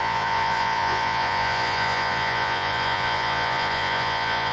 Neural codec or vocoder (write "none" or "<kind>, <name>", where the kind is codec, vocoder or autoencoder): vocoder, Vocos